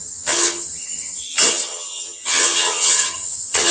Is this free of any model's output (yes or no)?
no